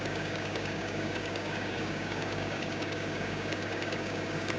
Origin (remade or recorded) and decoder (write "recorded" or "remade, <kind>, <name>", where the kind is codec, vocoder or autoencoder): remade, codec, DAC